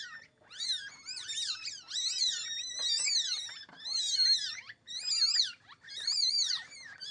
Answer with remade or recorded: recorded